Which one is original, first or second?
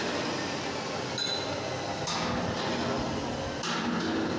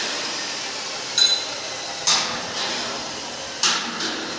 first